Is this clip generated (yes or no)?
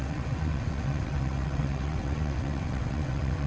yes